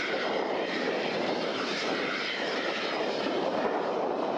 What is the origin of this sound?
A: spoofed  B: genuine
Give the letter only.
A